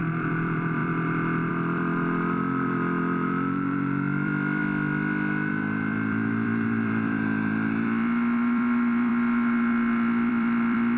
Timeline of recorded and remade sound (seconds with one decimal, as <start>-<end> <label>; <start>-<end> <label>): 0.0-4.6 remade; 4.6-5.5 recorded; 5.5-9.1 remade; 9.1-10.3 recorded; 10.3-11.0 remade